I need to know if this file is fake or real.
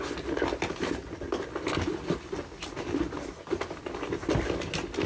real